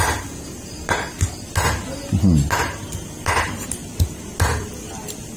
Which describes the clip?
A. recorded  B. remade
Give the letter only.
A